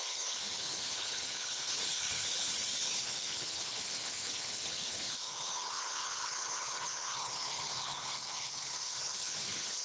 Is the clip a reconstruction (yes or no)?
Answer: yes